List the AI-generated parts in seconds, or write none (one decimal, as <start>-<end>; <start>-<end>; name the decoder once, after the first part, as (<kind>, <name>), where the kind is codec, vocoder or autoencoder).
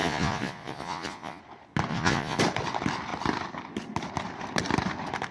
0.0-1.4 (vocoder, Vocos); 1.9-2.4